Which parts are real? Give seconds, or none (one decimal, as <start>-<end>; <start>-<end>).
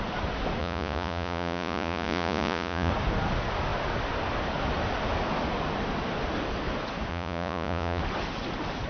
0.0-0.6; 2.9-7.1; 8.0-8.9